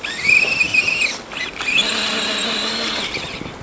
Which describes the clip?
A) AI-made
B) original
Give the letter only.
B